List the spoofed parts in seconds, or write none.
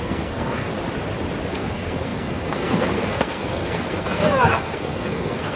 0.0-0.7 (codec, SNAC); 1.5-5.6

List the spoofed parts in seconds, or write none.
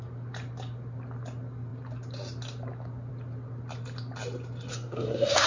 4.7-5.5 (codec, SNAC)